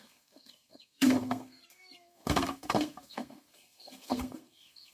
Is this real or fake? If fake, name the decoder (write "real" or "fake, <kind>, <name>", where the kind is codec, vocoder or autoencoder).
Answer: fake, codec, SNAC